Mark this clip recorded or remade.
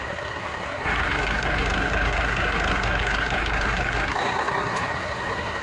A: remade